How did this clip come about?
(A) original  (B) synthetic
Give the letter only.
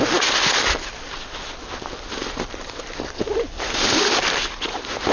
A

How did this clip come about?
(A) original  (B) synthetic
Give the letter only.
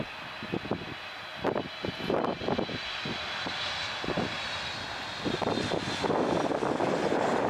A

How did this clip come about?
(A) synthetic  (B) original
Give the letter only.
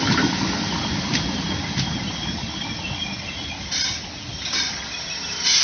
A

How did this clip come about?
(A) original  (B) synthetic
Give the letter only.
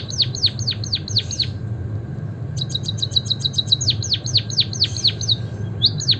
A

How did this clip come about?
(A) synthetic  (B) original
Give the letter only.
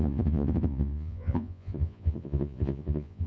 A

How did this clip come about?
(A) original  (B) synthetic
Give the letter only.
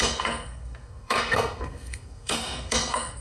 B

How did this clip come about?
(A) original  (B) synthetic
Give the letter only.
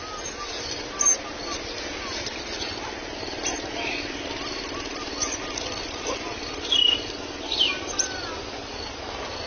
A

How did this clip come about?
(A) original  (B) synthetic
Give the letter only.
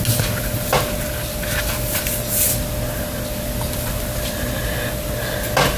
A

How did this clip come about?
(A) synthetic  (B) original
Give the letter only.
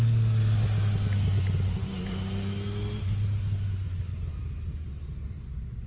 B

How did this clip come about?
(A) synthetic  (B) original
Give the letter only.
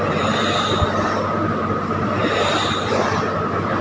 A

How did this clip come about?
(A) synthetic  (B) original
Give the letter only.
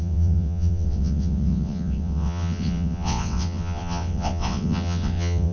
A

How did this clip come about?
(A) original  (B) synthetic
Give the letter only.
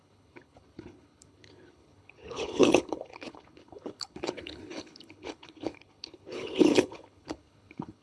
B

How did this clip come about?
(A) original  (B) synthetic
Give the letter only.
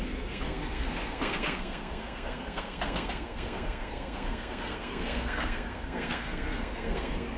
B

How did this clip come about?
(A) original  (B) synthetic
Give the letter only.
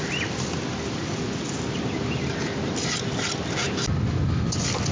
A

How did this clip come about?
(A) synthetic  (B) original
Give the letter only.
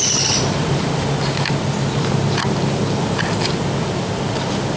B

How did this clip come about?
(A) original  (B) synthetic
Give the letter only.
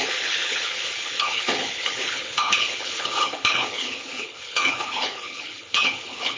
B